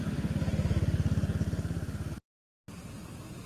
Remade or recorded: recorded